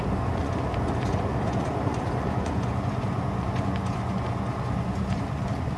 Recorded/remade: remade